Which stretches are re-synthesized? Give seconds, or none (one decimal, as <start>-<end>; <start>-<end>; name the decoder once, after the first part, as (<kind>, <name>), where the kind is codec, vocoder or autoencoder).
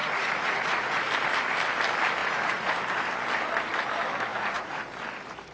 0.0-1.0 (vocoder, Vocos); 2.2-2.7; 4.3-4.8